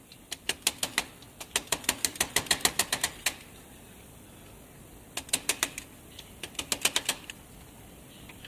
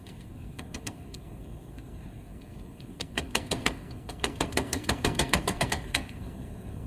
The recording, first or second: first